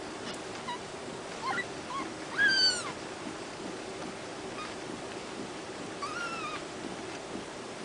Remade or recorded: recorded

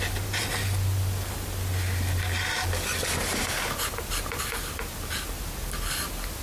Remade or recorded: recorded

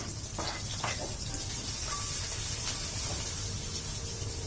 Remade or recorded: recorded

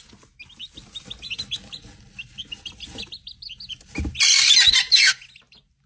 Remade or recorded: recorded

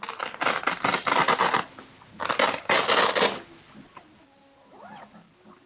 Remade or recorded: recorded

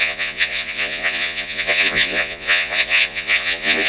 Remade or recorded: remade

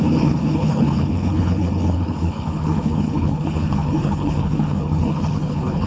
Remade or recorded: remade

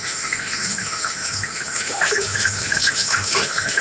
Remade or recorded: remade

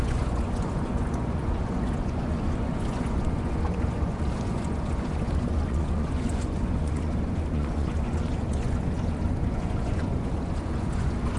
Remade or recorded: remade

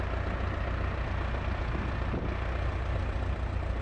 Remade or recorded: recorded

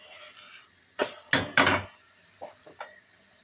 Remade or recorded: recorded